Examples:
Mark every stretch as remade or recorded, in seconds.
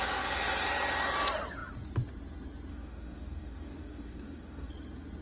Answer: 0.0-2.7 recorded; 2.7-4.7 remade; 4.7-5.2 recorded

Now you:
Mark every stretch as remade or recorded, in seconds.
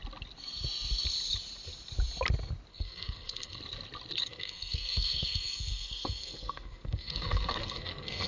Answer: 0.0-2.7 recorded; 2.7-3.6 remade; 3.6-4.2 recorded; 4.2-8.3 remade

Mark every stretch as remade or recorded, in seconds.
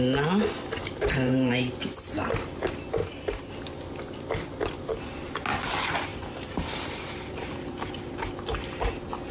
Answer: 0.0-0.8 recorded; 0.8-1.5 remade; 1.5-3.0 recorded; 3.0-3.5 remade; 3.5-6.1 recorded; 6.1-8.3 remade; 8.3-9.3 recorded